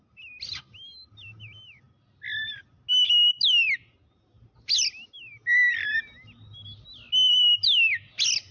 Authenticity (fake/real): real